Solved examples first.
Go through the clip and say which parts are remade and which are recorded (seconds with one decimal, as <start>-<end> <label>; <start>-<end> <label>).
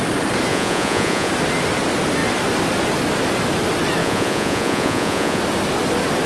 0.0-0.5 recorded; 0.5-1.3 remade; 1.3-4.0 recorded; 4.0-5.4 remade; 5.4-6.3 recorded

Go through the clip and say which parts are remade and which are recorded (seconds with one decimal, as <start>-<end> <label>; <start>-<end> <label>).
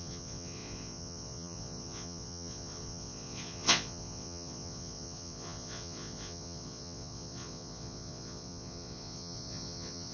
0.0-10.1 remade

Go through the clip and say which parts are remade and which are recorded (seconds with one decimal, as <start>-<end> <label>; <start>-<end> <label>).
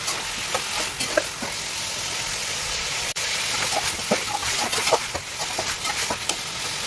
0.0-2.5 recorded; 2.5-3.4 remade; 3.4-4.4 recorded; 4.4-5.1 remade; 5.1-6.9 recorded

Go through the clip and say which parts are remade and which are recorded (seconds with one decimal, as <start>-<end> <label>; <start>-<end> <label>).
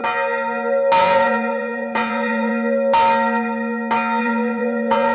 0.0-1.0 recorded; 1.0-2.5 remade; 2.5-4.2 recorded; 4.2-5.1 remade